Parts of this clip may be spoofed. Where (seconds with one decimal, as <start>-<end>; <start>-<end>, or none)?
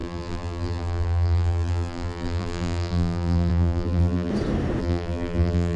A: 0.0-4.3; 4.8-5.8